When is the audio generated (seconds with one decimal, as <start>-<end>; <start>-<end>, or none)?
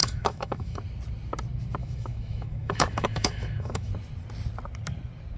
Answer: 0.0-0.8; 1.8-3.9